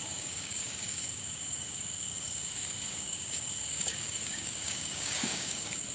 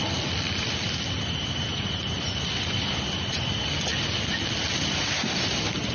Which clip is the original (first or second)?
second